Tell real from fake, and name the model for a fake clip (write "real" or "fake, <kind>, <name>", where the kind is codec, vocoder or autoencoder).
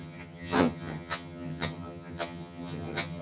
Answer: fake, vocoder, HiFi-GAN